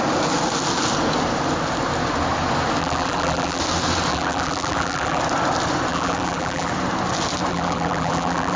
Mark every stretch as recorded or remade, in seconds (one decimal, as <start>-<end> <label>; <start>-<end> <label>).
0.0-2.8 recorded; 2.8-3.6 remade; 3.6-4.1 recorded; 4.1-5.2 remade; 5.2-5.9 recorded; 5.9-6.7 remade; 6.7-7.5 recorded; 7.5-8.6 remade